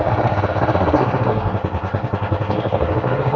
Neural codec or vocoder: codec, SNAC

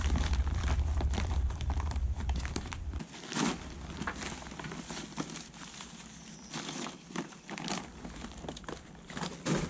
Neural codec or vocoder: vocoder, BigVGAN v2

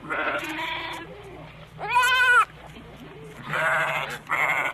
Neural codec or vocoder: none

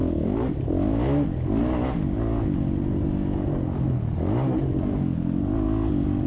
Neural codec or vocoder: none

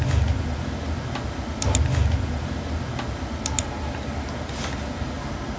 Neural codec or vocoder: none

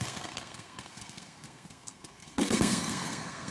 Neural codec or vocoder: codec, SNAC